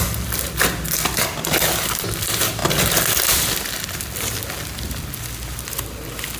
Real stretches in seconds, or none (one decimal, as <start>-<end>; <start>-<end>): 0.0-6.4